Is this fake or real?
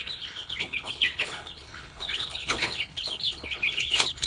fake